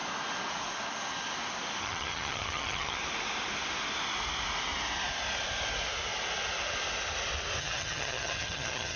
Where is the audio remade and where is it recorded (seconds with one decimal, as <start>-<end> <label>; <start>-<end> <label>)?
0.0-1.8 recorded; 1.8-3.0 remade; 3.0-7.6 recorded; 7.6-9.0 remade